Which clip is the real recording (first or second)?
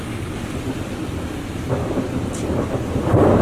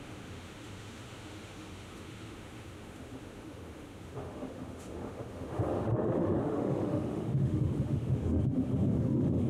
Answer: first